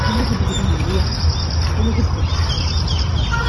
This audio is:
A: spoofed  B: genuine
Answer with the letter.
B